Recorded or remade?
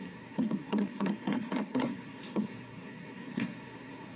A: remade